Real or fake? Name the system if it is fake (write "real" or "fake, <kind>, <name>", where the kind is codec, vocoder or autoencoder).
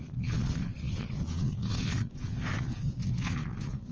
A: fake, vocoder, Vocos